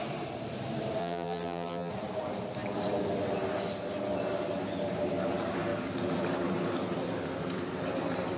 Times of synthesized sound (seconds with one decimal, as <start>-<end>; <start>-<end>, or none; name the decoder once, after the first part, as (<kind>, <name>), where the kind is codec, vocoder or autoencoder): 1.0-1.9 (vocoder, BigVGAN v2)